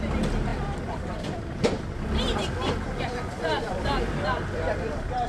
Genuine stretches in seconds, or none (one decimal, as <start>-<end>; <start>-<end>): none